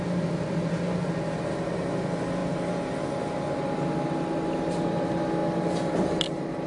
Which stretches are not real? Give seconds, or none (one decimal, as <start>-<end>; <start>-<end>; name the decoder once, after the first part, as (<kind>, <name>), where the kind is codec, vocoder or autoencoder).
none